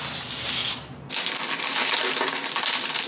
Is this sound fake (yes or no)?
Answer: no